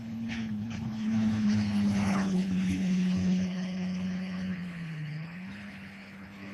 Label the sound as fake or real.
fake